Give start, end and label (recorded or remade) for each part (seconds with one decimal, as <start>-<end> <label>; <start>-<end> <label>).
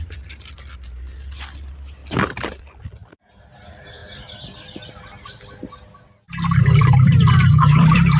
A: 0.0-4.0 remade; 4.0-6.6 recorded; 6.6-8.2 remade